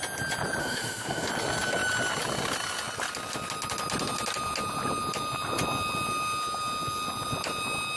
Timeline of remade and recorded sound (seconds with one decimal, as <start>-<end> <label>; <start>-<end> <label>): 0.0-0.6 recorded; 0.6-1.3 remade; 1.3-8.0 recorded